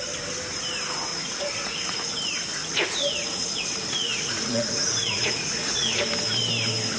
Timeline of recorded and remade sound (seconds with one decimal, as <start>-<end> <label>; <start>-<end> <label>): 0.0-1.1 recorded; 1.1-2.1 remade; 2.1-2.6 recorded; 2.6-6.0 remade; 6.0-7.0 recorded